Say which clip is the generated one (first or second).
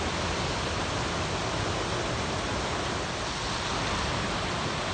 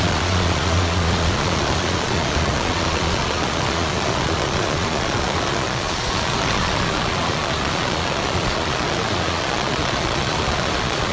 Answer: second